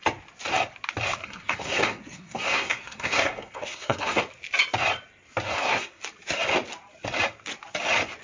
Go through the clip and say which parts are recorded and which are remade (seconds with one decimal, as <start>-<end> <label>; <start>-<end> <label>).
0.0-1.2 recorded; 1.2-4.2 remade; 4.2-5.5 recorded; 5.5-6.0 remade; 6.0-8.2 recorded